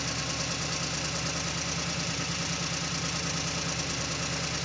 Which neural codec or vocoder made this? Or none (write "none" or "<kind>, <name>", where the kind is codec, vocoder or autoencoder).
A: none